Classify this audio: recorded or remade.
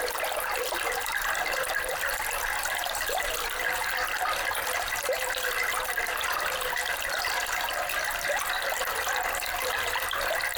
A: recorded